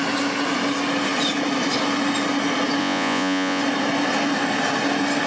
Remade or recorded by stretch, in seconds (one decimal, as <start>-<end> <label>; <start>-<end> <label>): 0.0-2.8 recorded; 2.8-3.6 remade; 3.6-5.3 recorded